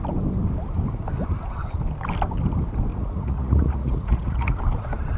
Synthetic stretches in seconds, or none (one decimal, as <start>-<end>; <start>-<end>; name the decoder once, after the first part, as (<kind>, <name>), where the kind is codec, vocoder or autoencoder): 2.9-4.6 (vocoder, Vocos)